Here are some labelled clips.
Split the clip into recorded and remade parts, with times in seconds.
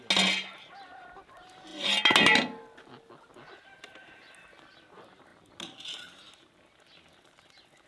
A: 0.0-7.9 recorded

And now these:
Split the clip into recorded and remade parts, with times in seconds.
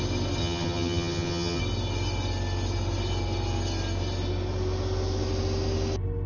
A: 0.0-0.4 recorded; 0.4-1.6 remade; 1.6-6.3 recorded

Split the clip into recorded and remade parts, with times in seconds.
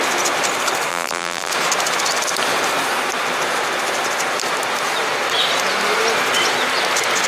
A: 0.0-0.9 recorded; 0.9-1.5 remade; 1.5-7.3 recorded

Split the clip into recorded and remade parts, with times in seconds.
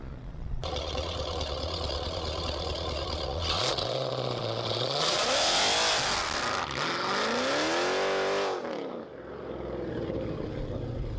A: 0.0-5.2 remade; 5.2-11.2 recorded